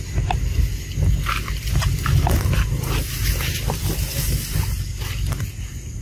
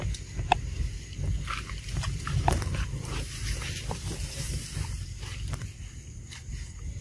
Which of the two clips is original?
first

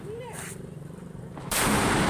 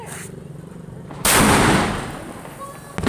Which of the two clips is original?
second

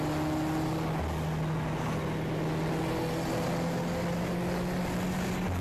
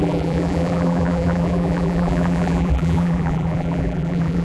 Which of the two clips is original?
first